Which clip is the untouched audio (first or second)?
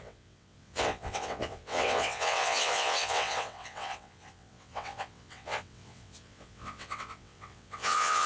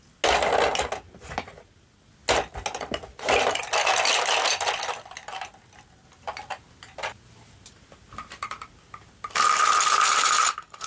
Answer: second